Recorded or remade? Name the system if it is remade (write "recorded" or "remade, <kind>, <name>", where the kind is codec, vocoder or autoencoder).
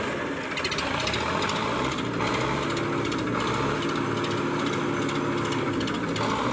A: recorded